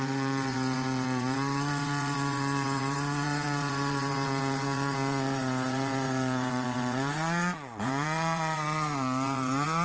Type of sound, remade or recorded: remade